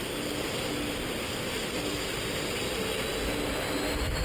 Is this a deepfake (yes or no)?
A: no